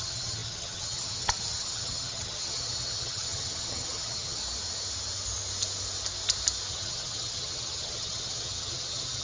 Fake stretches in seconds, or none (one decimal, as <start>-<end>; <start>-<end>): 0.0-4.4; 6.7-9.2